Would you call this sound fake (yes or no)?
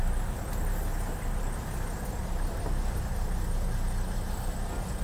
no